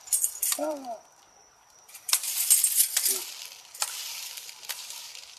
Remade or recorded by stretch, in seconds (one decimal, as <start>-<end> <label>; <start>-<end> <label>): 0.0-0.5 recorded; 0.5-2.8 remade; 2.8-4.1 recorded; 4.1-5.4 remade